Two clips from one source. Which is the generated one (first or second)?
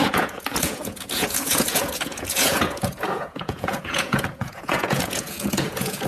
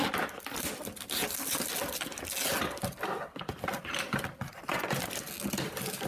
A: first